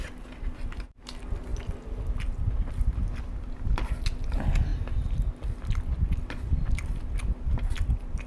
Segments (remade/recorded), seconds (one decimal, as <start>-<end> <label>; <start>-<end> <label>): 0.0-8.3 recorded